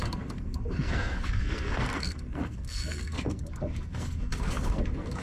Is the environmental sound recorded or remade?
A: remade